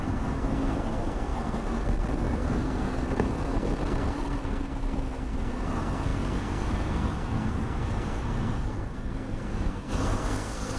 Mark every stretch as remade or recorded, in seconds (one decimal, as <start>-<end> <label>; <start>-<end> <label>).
0.0-10.8 remade